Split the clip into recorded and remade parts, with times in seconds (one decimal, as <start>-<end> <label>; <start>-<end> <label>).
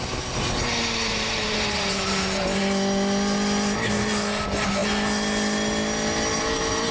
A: 0.0-1.1 recorded; 1.1-2.6 remade; 2.6-6.9 recorded